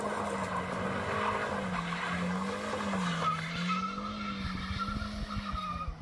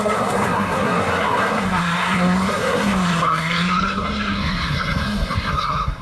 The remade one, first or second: second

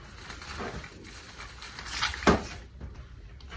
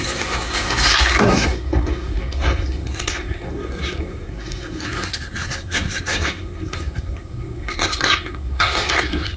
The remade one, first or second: second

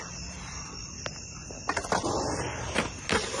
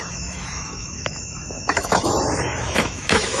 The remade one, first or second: second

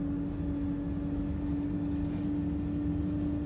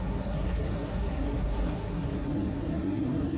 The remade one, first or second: second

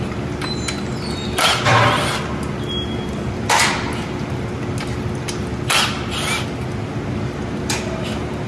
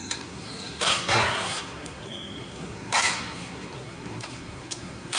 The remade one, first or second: second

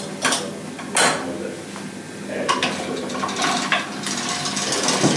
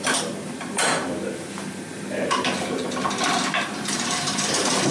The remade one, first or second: second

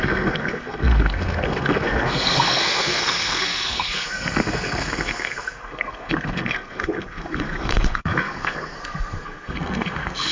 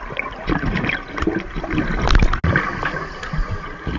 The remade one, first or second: first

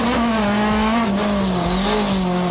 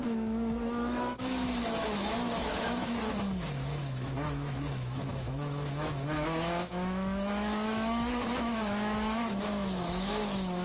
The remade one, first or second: second